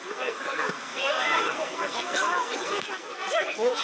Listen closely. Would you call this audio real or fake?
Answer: fake